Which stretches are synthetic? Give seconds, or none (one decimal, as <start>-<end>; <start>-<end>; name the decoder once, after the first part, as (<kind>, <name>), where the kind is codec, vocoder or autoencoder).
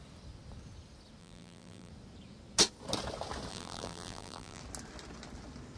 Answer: 1.2-1.9 (vocoder, BigVGAN v2); 3.5-4.6